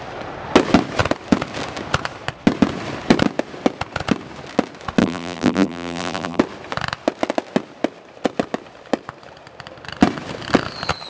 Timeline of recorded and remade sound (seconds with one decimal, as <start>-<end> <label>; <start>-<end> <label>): 0.0-5.0 recorded; 5.0-6.4 remade; 6.4-11.1 recorded